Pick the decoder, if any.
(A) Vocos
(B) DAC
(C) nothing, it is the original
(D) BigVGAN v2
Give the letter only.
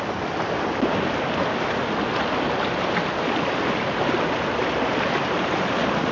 C